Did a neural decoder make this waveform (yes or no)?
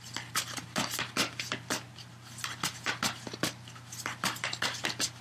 no